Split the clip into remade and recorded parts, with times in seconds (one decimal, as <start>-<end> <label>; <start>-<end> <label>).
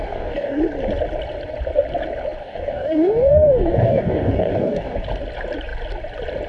0.0-0.6 remade; 0.6-2.4 recorded; 2.4-5.0 remade; 5.0-6.5 recorded